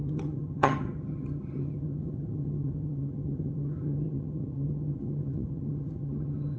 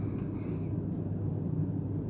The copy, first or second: first